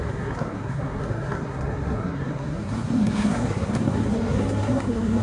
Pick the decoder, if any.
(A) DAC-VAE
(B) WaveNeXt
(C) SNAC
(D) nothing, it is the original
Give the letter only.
C